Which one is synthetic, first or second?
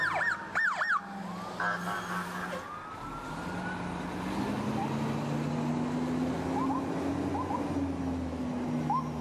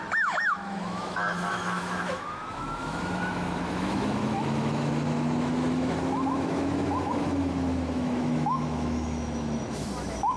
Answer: second